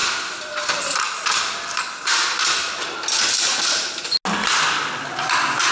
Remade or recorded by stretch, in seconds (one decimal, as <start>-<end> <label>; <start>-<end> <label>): 0.0-5.7 recorded